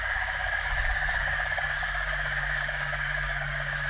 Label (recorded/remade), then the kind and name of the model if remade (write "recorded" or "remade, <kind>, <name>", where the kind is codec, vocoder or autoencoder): remade, codec, DAC